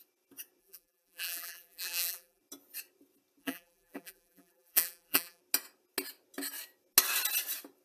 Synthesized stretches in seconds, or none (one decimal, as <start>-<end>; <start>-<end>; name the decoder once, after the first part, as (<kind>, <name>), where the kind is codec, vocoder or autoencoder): 0.6-2.4 (vocoder, BigVGAN v2); 3.4-5.4